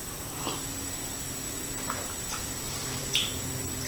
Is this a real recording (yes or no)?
no